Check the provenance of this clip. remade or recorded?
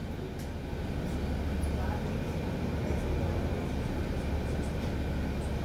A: recorded